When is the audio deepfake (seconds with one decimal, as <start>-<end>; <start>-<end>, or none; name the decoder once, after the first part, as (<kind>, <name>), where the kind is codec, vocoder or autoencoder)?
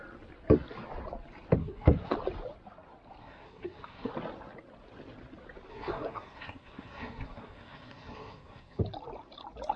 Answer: 1.6-2.1 (codec, SNAC); 3.2-4.1; 5.7-8.8